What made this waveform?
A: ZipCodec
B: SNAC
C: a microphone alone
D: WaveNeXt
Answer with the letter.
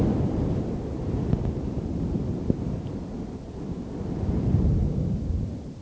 C